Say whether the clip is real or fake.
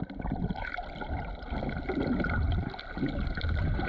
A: real